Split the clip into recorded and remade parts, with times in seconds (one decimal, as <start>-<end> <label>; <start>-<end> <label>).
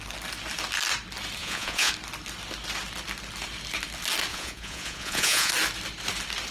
0.0-1.4 recorded; 1.4-1.9 remade; 1.9-4.3 recorded; 4.3-5.5 remade; 5.5-6.5 recorded